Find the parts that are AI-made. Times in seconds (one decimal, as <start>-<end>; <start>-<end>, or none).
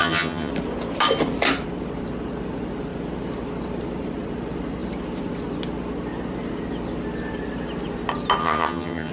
0.0-0.5; 8.4-9.1